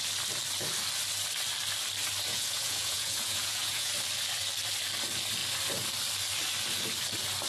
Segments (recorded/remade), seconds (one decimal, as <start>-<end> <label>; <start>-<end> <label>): 0.0-2.3 recorded; 2.3-3.9 remade; 3.9-7.5 recorded